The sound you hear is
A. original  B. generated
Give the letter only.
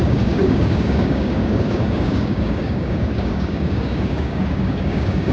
B